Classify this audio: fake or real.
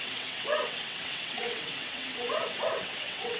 fake